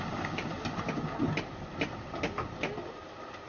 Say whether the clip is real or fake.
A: real